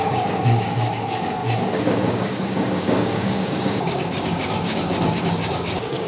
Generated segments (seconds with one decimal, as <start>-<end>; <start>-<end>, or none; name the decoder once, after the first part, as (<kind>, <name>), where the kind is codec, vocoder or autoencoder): 0.0-6.1 (codec, DAC)